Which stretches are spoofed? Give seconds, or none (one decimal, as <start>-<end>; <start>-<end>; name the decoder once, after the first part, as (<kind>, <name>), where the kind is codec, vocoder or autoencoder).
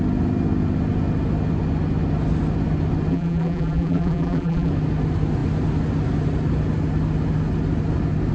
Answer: 3.1-4.7 (vocoder, BigVGAN v2)